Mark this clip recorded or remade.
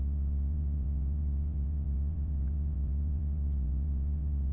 remade